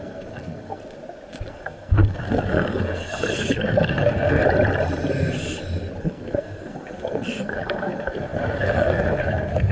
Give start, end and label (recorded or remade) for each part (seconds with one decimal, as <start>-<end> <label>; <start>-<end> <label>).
0.0-0.8 remade; 0.8-1.5 recorded; 1.5-4.4 remade; 4.4-6.0 recorded; 6.0-9.7 remade